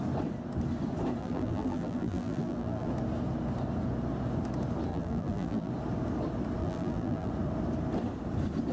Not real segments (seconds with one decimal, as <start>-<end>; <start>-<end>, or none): 1.2-2.9; 4.9-5.7; 6.6-7.3